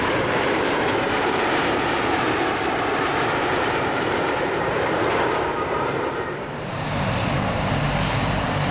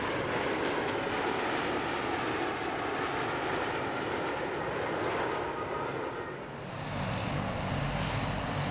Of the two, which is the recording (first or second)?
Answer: second